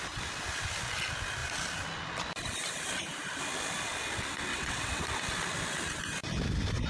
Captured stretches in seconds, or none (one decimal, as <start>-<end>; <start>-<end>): 0.0-4.5; 5.0-6.9